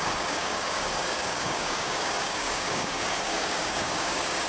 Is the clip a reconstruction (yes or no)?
yes